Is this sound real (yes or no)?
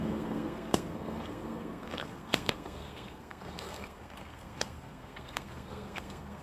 no